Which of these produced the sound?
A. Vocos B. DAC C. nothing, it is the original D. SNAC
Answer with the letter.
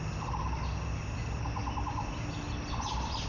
C